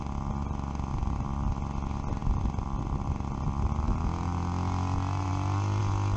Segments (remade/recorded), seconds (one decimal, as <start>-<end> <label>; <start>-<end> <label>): 0.0-6.2 recorded